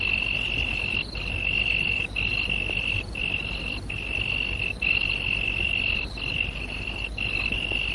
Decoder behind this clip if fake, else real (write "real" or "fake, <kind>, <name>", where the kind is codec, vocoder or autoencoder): real